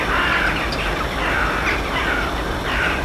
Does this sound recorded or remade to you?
recorded